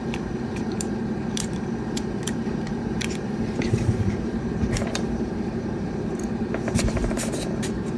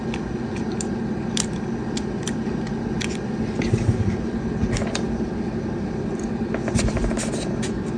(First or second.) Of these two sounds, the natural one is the second